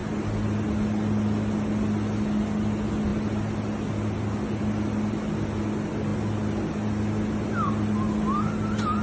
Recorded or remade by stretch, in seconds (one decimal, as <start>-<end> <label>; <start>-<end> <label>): 0.0-9.0 recorded

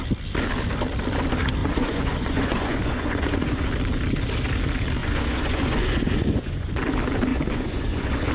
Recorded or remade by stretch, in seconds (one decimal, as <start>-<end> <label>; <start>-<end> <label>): 0.0-1.6 recorded; 1.6-3.7 remade; 3.7-5.0 recorded; 5.0-6.7 remade; 6.7-7.3 recorded; 7.3-8.3 remade

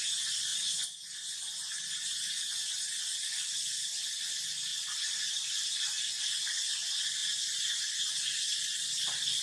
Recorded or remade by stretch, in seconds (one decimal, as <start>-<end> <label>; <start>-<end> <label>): 0.0-0.5 recorded; 0.5-3.0 remade; 3.0-9.4 recorded

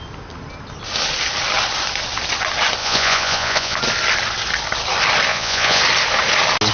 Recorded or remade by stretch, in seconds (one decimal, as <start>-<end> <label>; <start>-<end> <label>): 0.0-2.8 recorded; 2.8-3.8 remade; 3.8-5.3 recorded; 5.3-5.8 remade; 5.8-6.7 recorded

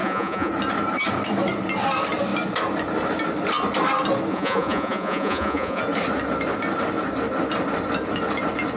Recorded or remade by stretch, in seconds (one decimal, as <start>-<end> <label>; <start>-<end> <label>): 0.0-0.5 remade; 0.5-4.3 recorded; 4.3-5.8 remade; 5.8-8.8 recorded